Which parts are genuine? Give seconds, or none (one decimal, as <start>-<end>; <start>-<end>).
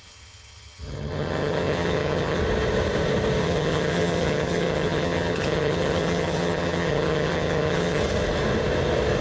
2.4-3.4; 8.0-9.2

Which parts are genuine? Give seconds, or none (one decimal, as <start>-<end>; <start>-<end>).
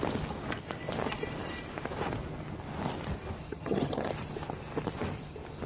0.0-3.5; 4.1-5.7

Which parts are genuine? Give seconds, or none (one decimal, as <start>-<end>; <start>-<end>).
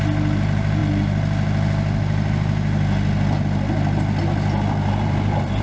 0.0-5.6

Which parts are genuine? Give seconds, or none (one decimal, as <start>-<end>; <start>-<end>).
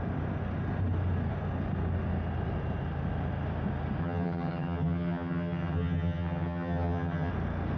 0.0-4.0; 7.3-7.8